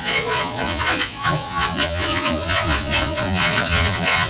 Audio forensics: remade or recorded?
remade